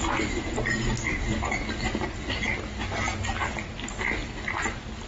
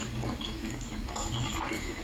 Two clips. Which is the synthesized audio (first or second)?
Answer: second